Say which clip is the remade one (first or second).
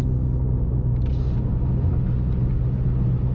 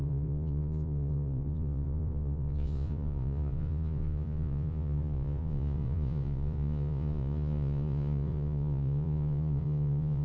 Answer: second